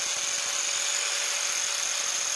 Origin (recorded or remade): recorded